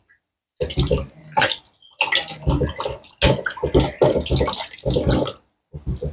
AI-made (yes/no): no